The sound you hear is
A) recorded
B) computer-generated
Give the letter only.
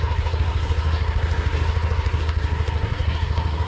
B